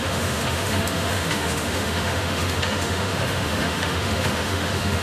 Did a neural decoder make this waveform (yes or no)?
yes